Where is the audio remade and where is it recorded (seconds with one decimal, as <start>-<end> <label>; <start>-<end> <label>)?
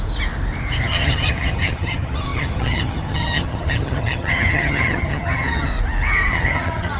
0.0-0.8 recorded; 0.8-5.7 remade; 5.7-6.3 recorded; 6.3-7.0 remade